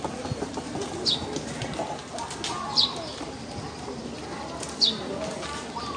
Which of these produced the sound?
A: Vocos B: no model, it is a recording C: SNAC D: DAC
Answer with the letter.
B